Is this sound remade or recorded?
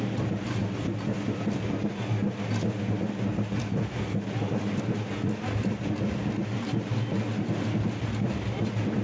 recorded